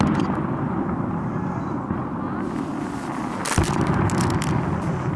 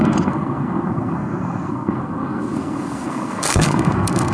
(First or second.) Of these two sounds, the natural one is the first